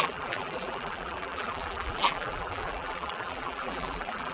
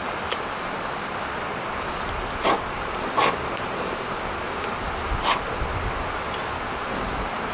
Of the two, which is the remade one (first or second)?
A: first